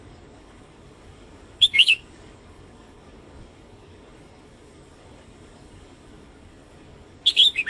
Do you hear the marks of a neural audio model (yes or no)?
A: yes